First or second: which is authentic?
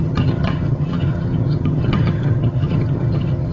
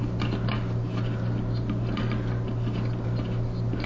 second